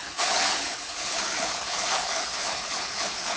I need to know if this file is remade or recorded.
remade